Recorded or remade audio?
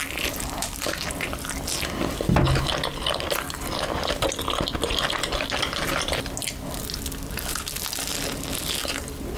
recorded